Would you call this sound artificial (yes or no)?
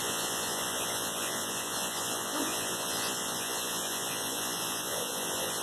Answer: yes